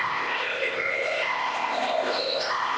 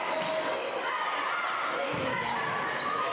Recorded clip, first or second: second